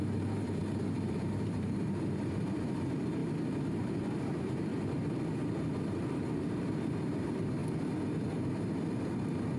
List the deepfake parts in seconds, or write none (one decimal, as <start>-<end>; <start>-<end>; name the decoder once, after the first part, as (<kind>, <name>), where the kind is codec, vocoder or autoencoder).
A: 0.0-3.2 (vocoder, BigVGAN v2); 3.8-4.7; 5.6-7.6; 8.5-9.6